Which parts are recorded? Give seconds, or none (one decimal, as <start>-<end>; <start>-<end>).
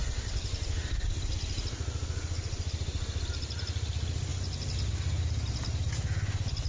0.0-6.7